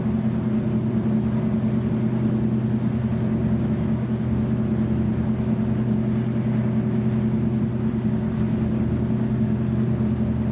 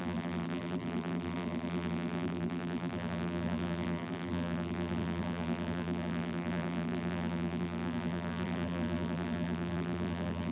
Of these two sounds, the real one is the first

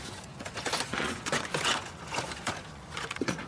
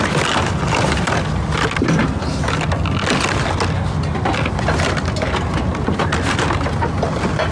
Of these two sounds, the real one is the second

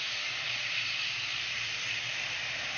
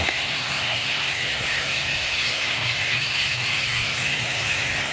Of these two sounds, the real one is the first